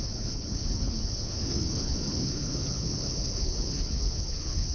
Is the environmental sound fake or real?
fake